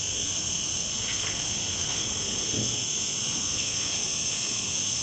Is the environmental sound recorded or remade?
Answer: remade